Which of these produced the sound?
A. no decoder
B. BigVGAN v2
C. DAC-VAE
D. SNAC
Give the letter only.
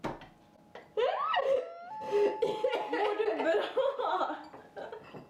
A